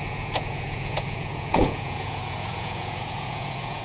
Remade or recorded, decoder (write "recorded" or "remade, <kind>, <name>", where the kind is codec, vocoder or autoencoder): remade, vocoder, Vocos